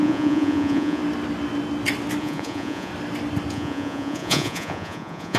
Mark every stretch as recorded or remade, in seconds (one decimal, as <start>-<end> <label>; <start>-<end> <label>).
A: 0.0-1.0 remade; 1.0-2.2 recorded; 2.2-2.9 remade; 2.9-3.5 recorded; 3.5-5.4 remade